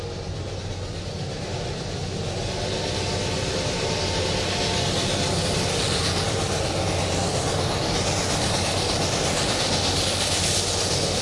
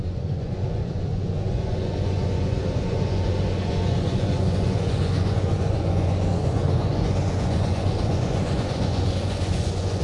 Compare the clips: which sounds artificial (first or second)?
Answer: second